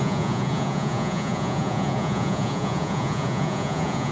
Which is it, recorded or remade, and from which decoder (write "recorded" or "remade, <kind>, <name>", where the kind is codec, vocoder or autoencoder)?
remade, vocoder, Vocos